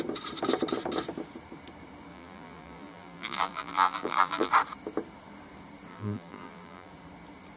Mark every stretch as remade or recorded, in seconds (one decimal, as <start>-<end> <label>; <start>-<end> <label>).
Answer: 0.0-2.1 recorded; 2.1-4.5 remade; 4.5-5.9 recorded; 5.9-6.9 remade; 6.9-7.6 recorded

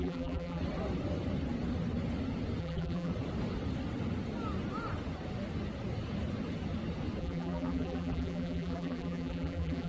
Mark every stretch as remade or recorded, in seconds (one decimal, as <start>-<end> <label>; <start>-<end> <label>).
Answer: 0.0-0.6 remade; 0.6-2.6 recorded; 2.6-3.1 remade; 3.1-7.2 recorded; 7.2-9.9 remade